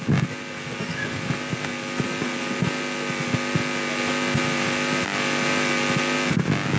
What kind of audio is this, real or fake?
real